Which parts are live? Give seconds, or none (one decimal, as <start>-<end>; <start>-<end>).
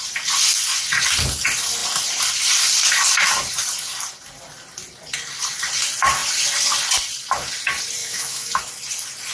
0.0-8.0; 8.6-9.3